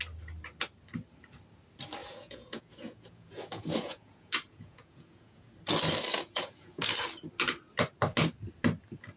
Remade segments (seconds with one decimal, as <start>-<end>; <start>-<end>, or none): 2.0-5.5; 6.1-6.8

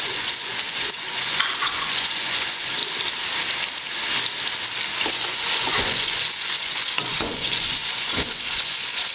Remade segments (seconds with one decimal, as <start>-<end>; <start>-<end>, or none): 0.0-2.8; 5.1-9.1

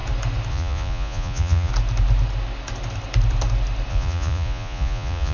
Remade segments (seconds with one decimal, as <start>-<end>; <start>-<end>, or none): 0.5-1.7; 3.9-5.3

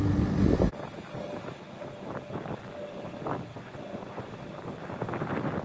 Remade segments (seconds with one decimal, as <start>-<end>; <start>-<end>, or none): 3.5-4.3

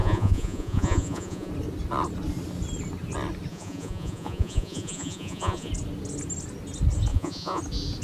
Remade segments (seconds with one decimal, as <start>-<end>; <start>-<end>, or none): 0.0-1.5; 3.5-5.7; 7.1-7.6